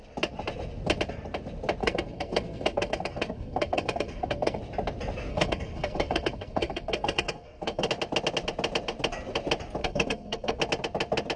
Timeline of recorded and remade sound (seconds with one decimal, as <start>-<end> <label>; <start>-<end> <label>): 0.0-1.8 recorded; 1.8-4.6 remade; 4.6-5.3 recorded; 5.3-7.9 remade; 7.9-9.8 recorded; 9.8-10.6 remade; 10.6-11.4 recorded